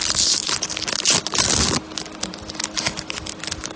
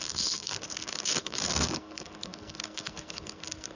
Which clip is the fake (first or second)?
second